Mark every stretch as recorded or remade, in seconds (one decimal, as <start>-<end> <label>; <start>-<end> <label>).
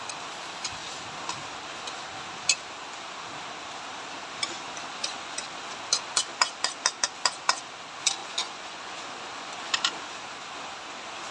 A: 0.0-4.9 recorded; 4.9-5.5 remade; 5.5-8.2 recorded; 8.2-9.9 remade; 9.9-11.3 recorded